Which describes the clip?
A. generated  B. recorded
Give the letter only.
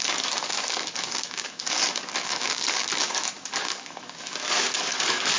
A